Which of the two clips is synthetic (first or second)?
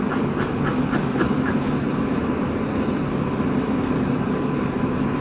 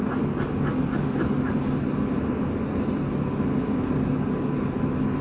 first